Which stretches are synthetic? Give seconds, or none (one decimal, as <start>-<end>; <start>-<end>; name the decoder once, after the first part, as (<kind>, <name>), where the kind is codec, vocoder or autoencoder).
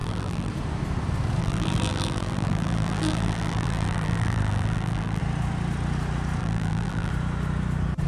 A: 0.0-0.5 (vocoder, BigVGAN v2); 1.4-5.2; 6.4-7.1